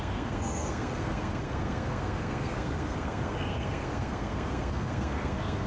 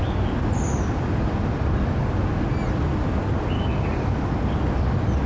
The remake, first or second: first